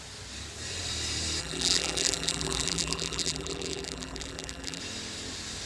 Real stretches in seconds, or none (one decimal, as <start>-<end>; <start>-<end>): 0.0-1.4; 4.8-5.7